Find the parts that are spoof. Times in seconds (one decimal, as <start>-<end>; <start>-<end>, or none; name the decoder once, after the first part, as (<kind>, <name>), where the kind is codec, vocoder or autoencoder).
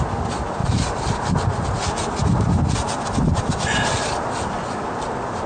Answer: 0.6-1.2 (vocoder, BigVGAN v2)